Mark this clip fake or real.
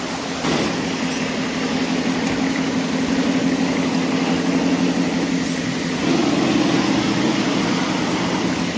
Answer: real